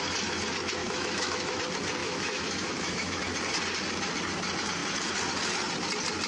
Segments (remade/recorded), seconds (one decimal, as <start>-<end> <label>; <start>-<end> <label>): 0.0-0.8 recorded; 0.8-1.6 remade; 1.6-2.0 recorded; 2.0-3.2 remade; 3.2-6.3 recorded